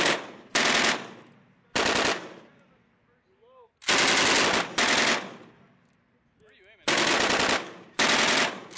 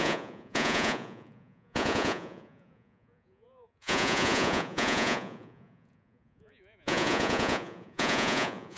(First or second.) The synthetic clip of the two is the second